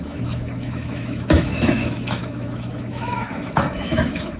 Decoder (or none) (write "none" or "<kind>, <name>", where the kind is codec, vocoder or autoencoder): autoencoder, DAC-VAE